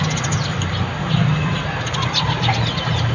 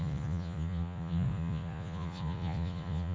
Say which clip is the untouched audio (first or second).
first